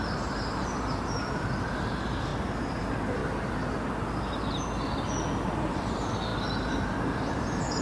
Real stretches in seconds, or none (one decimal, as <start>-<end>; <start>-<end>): 2.3-2.8; 3.2-5.7; 6.3-7.3